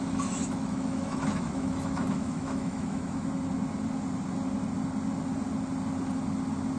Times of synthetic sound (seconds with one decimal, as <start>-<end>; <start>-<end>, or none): 0.4-3.3